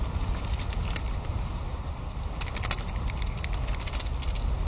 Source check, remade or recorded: recorded